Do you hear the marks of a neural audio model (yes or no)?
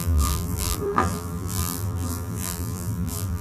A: yes